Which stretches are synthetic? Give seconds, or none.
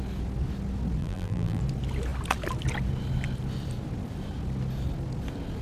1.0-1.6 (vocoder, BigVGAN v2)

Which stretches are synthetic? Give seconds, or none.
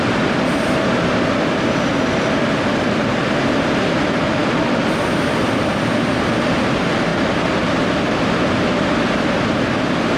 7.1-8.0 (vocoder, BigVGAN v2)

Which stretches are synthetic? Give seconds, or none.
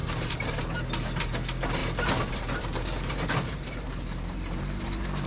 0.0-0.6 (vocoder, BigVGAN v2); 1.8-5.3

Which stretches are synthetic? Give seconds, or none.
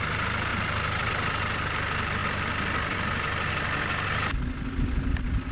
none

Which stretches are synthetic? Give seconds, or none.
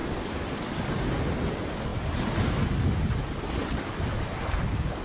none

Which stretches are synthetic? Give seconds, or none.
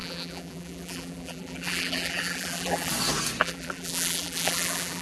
0.0-2.9 (vocoder, BigVGAN v2); 3.4-5.0